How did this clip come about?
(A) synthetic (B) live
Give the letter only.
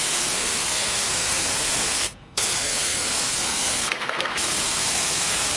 A